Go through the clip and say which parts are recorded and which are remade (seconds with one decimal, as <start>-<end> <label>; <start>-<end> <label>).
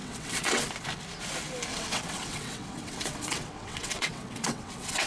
0.0-0.7 remade; 0.7-1.7 recorded; 1.7-5.1 remade